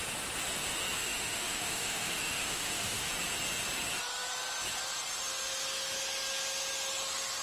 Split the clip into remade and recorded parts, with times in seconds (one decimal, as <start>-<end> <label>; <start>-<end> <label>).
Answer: 0.0-1.0 recorded; 1.0-3.1 remade; 3.1-7.4 recorded